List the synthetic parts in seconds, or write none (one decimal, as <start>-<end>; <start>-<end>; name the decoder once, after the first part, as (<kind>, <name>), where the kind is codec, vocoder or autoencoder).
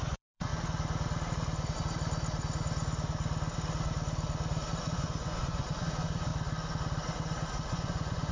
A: 0.0-0.5 (vocoder, Vocos); 4.8-6.3; 7.7-8.3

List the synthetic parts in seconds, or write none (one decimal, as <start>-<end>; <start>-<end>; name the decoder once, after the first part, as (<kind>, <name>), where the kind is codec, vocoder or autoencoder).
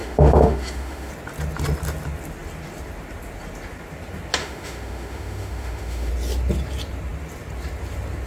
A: 0.0-1.1 (autoencoder, DAC-VAE); 4.4-6.1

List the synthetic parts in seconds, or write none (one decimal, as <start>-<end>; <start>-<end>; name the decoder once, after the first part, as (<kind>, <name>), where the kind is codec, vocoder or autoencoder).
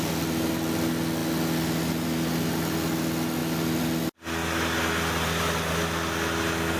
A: none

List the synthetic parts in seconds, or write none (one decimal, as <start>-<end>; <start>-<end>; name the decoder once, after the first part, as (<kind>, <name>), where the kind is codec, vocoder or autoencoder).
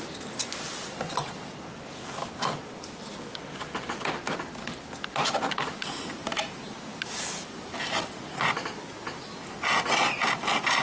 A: none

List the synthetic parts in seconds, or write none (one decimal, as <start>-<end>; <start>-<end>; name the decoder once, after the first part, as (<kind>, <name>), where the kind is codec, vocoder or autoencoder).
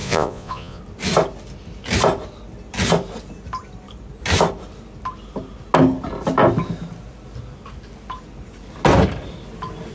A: 0.0-0.8 (vocoder, Vocos)